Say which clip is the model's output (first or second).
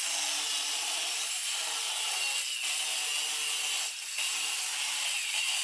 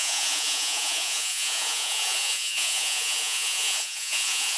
second